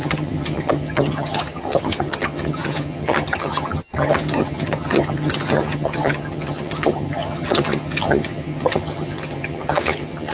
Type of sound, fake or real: fake